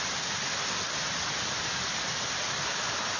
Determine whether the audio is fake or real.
real